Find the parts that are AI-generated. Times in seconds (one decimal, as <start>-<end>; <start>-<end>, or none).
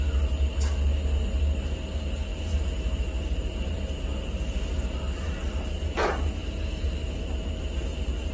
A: 2.3-7.2